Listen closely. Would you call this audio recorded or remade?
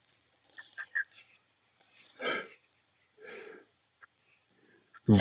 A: remade